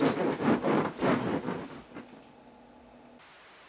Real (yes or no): yes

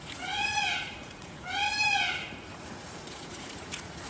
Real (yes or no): no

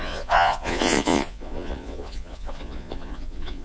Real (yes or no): no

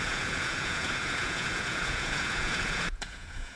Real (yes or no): no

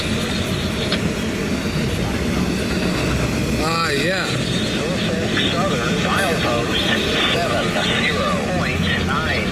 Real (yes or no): yes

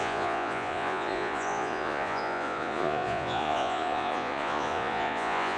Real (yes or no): no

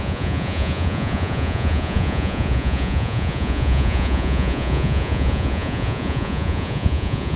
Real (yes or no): no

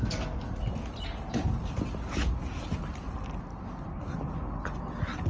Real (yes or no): yes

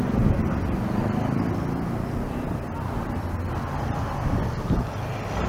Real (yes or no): yes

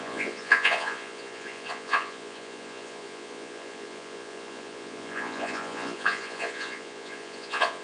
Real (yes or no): no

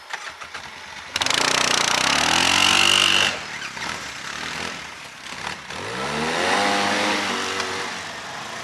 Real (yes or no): yes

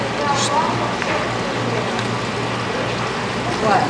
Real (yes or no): yes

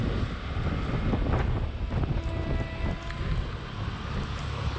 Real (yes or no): yes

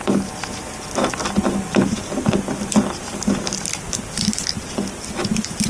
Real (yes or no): yes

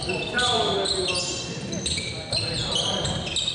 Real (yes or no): yes